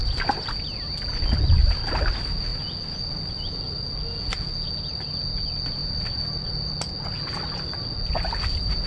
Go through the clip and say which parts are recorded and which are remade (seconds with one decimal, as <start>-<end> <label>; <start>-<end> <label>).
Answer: 0.0-8.9 recorded